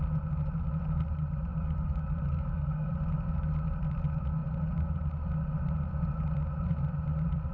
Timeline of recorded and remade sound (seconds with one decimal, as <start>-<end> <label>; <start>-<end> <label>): 0.0-1.5 recorded; 1.5-2.9 remade; 2.9-7.5 recorded